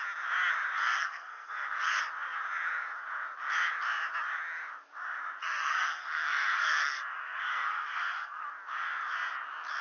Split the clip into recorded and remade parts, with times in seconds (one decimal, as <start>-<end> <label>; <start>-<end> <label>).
0.0-0.8 recorded; 0.8-2.0 remade; 2.0-5.4 recorded; 5.4-8.4 remade; 8.4-9.8 recorded